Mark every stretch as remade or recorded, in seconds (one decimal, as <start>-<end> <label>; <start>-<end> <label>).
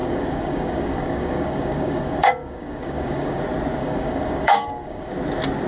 0.0-3.4 remade; 3.4-3.8 recorded; 3.8-5.1 remade; 5.1-5.7 recorded